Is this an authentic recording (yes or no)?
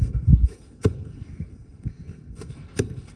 no